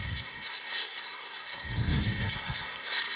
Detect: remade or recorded remade